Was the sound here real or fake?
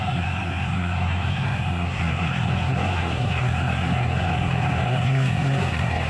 fake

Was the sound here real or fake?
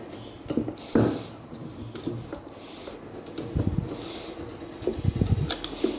real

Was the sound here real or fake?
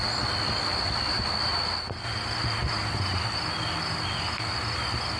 real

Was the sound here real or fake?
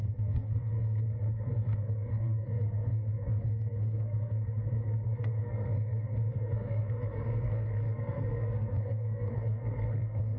fake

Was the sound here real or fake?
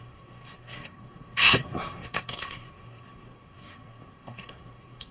fake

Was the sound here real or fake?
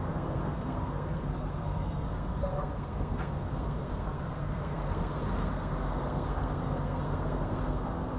fake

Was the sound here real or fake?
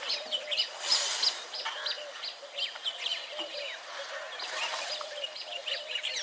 real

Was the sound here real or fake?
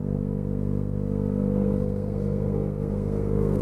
fake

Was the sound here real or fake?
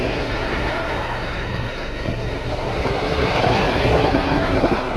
fake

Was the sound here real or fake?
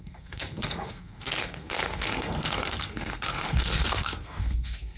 fake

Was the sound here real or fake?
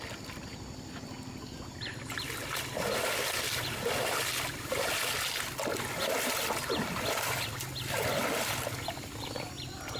real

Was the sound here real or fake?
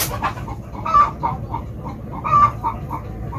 real